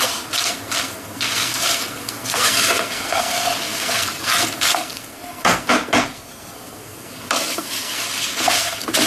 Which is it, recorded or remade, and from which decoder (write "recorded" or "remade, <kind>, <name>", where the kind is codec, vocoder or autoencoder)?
remade, codec, SNAC